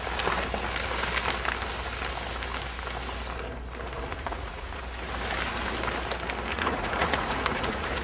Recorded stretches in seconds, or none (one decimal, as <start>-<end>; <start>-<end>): 0.0-4.1; 4.8-6.5